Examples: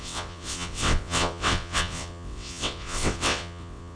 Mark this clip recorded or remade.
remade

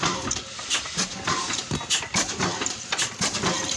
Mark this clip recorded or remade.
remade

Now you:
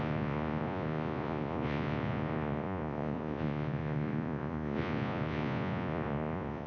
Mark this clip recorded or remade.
remade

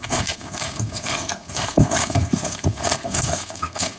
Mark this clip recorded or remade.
remade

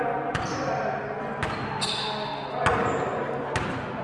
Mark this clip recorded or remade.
recorded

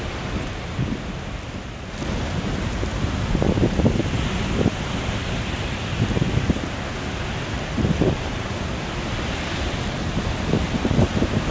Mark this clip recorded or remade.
recorded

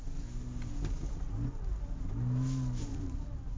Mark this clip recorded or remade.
recorded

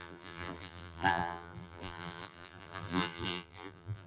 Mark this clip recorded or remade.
remade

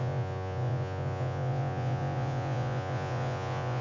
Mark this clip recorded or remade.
remade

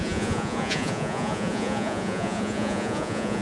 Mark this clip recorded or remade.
remade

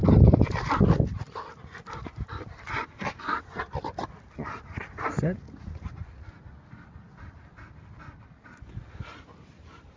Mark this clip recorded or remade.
recorded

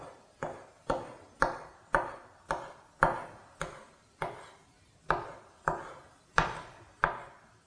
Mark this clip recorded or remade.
recorded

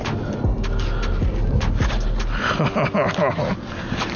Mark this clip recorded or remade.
recorded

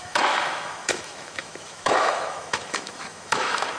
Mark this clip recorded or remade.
remade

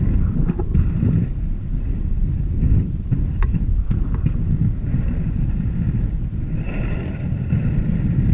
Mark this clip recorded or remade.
remade